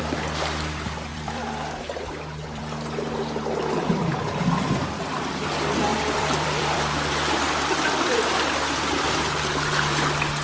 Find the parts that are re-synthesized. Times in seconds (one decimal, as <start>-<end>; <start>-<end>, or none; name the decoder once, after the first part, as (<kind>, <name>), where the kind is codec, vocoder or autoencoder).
1.1-2.6 (vocoder, BigVGAN v2); 5.9-7.1